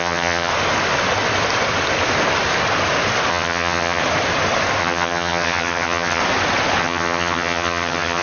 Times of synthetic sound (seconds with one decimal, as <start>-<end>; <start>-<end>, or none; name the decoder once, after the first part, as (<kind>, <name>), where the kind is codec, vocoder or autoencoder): 0.0-0.5 (vocoder, HiFi-GAN); 3.3-4.0; 4.8-6.2; 6.8-8.2